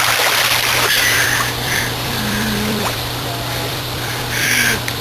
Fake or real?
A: fake